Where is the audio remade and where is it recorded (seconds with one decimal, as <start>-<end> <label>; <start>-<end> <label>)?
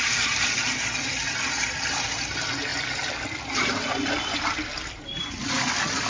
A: 0.0-6.1 recorded